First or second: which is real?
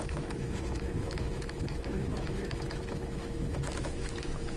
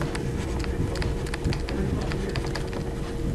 second